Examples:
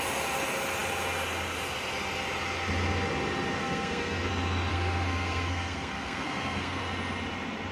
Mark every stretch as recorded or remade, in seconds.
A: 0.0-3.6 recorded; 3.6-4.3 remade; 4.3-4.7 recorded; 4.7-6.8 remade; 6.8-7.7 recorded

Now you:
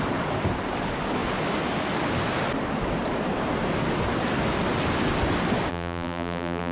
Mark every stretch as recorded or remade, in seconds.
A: 0.0-5.7 recorded; 5.7-6.7 remade

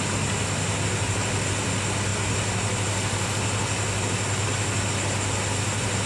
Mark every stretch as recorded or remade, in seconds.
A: 0.0-6.1 recorded

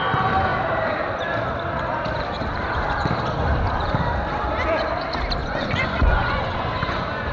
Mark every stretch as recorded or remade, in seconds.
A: 0.0-5.4 recorded; 5.4-7.3 remade

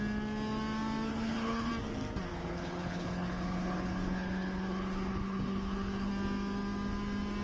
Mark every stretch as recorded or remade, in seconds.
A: 0.0-1.1 recorded; 1.1-1.7 remade; 1.7-2.3 recorded; 2.3-6.1 remade; 6.1-7.4 recorded